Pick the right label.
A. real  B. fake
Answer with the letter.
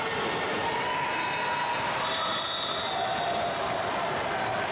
A